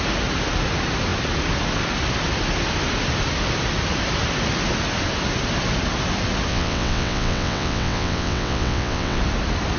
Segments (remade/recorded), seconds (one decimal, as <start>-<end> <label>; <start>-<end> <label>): 0.0-6.5 recorded; 6.5-9.2 remade; 9.2-9.8 recorded

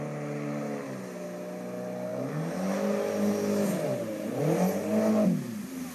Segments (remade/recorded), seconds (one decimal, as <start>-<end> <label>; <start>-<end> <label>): 0.0-5.9 recorded

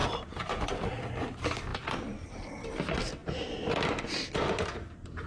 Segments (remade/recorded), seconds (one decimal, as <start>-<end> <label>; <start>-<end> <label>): 0.0-5.3 recorded

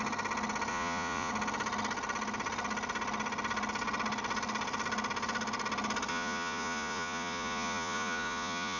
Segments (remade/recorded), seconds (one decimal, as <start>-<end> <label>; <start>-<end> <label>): 0.0-0.7 recorded; 0.7-1.3 remade; 1.3-6.1 recorded; 6.1-8.8 remade

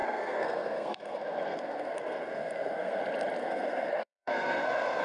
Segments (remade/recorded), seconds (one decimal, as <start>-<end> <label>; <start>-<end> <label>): 0.0-3.0 remade; 3.0-3.4 recorded; 3.4-5.0 remade